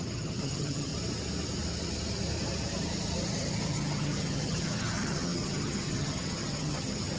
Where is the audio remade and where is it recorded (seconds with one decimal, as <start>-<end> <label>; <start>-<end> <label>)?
0.0-0.9 remade; 0.9-3.7 recorded; 3.7-7.2 remade